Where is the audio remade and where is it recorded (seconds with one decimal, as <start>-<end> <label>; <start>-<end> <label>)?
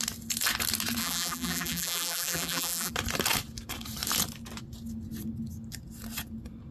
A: 0.0-1.0 recorded; 1.0-2.9 remade; 2.9-6.7 recorded